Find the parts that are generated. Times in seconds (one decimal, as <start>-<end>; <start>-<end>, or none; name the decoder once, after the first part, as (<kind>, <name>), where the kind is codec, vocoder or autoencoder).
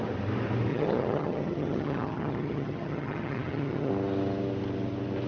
0.7-3.9 (vocoder, HiFi-GAN)